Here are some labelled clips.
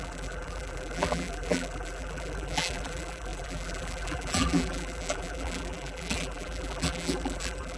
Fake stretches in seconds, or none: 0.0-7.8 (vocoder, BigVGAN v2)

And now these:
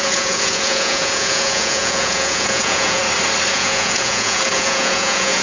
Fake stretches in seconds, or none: 0.0-3.0 (vocoder, Vocos); 3.5-5.4

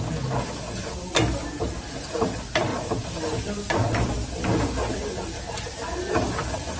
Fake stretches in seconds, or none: none

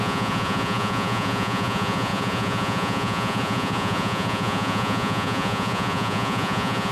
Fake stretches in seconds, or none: 0.0-6.9 (vocoder, Vocos)

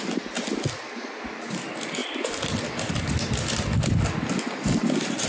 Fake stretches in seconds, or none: 2.0-3.0 (vocoder, BigVGAN v2)